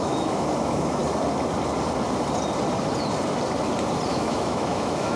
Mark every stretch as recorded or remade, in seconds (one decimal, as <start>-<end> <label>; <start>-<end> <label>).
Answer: 0.0-1.0 remade; 1.0-4.1 recorded; 4.1-5.2 remade